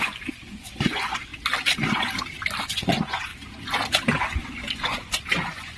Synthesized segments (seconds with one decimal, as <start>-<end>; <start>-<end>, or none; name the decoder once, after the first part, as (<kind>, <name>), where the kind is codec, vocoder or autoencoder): 0.0-1.3 (vocoder, Vocos); 2.6-3.3; 4.2-5.8